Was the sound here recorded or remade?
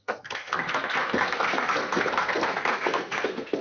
remade